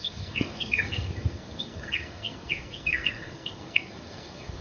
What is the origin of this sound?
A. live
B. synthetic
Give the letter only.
B